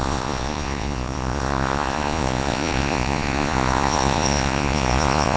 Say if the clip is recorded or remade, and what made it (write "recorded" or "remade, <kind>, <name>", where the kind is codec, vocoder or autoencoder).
remade, vocoder, Vocos